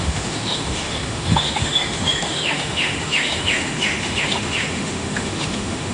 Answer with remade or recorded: remade